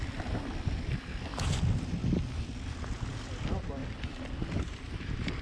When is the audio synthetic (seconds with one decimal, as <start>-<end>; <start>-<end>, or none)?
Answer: none